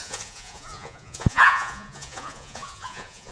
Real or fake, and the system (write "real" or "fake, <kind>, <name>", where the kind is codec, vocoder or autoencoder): fake, vocoder, Vocos